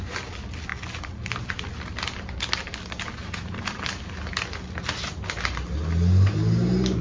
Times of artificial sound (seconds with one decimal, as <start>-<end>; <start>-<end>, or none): none